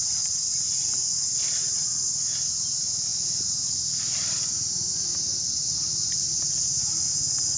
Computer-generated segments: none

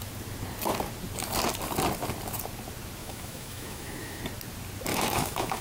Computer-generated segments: 3.0-4.2 (autoencoder, DAC-VAE); 4.9-5.6

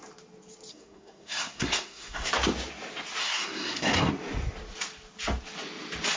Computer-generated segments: 0.7-2.3 (codec, SNAC); 3.2-4.1

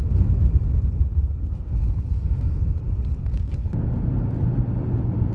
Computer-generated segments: 1.4-2.6 (codec, SNAC); 3.2-3.8

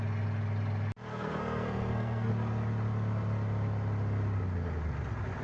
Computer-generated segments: 1.1-2.3 (codec, SNAC)